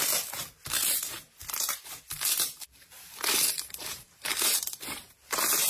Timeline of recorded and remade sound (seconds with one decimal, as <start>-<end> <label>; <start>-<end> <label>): 0.0-1.4 recorded; 1.4-4.8 remade; 4.8-5.7 recorded